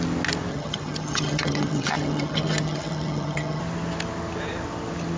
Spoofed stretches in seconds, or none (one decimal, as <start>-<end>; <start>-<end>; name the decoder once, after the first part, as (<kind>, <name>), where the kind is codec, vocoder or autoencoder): 0.5-3.6 (vocoder, HiFi-GAN)